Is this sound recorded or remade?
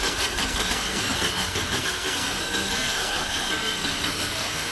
remade